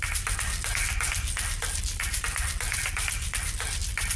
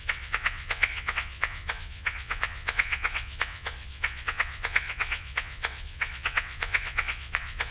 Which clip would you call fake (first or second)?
second